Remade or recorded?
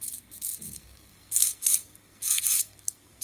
remade